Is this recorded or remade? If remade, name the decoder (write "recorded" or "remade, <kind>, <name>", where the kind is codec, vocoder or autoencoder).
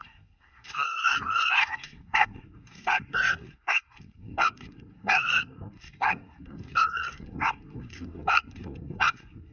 remade, codec, SNAC